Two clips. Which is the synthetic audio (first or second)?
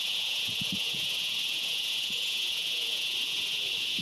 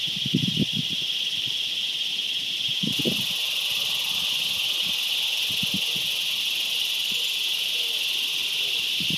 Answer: first